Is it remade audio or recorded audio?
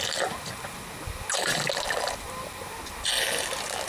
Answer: recorded